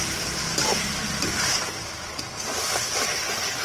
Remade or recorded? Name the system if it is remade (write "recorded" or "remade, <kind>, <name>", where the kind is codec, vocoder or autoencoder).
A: recorded